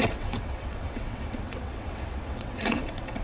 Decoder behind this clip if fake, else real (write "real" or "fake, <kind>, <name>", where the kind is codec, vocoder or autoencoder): fake, vocoder, WaveNeXt